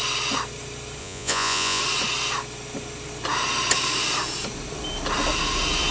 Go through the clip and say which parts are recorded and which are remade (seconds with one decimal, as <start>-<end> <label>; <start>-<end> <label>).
0.0-1.0 recorded; 1.0-1.8 remade; 1.8-5.9 recorded